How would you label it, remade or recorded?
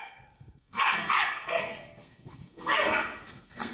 remade